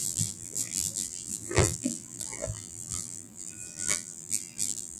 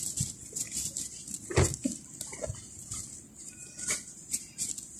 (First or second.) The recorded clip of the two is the second